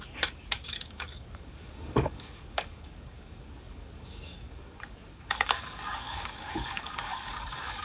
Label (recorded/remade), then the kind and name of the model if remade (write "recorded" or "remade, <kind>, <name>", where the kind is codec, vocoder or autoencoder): remade, codec, DAC